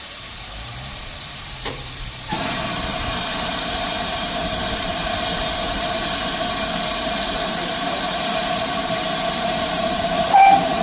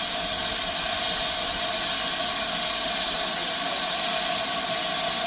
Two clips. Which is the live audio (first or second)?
second